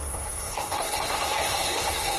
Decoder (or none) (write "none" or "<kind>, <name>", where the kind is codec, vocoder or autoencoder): codec, SNAC